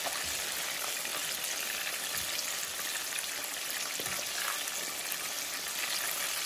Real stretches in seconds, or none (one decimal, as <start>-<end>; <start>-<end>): 0.0-6.5